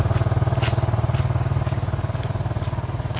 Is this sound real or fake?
real